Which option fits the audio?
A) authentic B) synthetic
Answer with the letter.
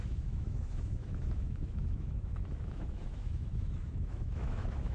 B